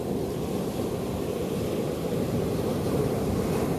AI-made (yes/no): no